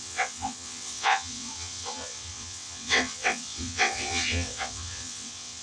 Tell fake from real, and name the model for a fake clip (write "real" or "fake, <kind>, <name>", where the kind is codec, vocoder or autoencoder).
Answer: fake, vocoder, WaveNeXt